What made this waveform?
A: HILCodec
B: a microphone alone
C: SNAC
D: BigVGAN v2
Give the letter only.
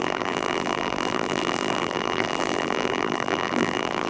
D